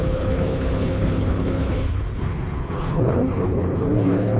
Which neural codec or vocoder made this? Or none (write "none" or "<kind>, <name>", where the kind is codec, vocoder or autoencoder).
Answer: codec, HILCodec